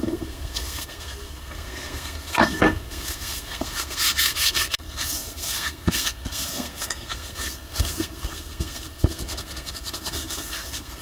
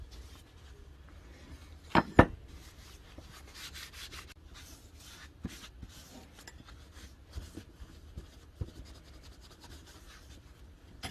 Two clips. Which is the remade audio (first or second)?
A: first